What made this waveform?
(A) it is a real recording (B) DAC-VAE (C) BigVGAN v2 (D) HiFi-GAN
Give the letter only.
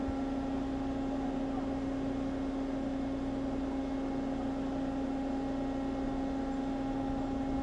A